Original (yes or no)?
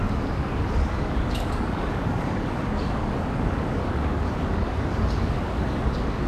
no